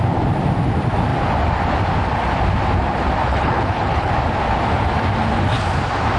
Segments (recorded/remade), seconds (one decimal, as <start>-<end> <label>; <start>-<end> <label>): 0.0-3.3 recorded; 3.3-4.1 remade; 4.1-6.2 recorded

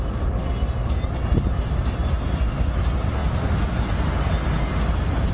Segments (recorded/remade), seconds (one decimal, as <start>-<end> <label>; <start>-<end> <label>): 0.0-5.3 recorded

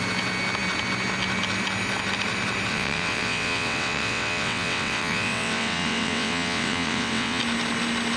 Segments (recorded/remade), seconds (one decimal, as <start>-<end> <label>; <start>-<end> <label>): 0.0-2.7 recorded; 2.7-7.4 remade; 7.4-8.2 recorded